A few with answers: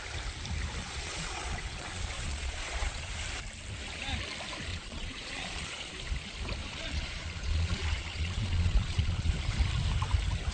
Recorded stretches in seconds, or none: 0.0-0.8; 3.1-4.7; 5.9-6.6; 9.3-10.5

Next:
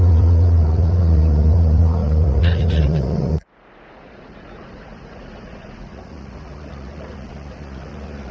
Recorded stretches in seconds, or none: none

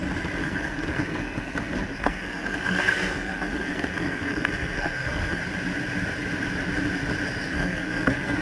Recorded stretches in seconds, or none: 0.0-0.4; 5.4-7.4